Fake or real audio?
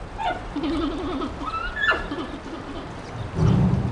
real